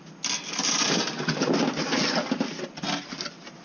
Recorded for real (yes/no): yes